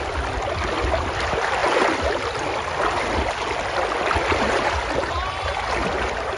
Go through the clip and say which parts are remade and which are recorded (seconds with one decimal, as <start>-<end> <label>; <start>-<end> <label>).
0.0-6.4 recorded